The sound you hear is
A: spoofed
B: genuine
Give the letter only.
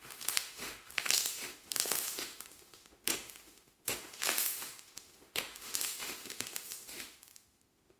A